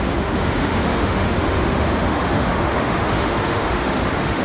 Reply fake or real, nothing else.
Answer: fake